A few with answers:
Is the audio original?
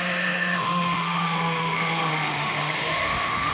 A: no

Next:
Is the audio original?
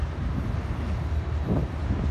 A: yes